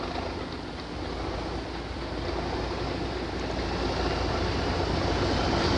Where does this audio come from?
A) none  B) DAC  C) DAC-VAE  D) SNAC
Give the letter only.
A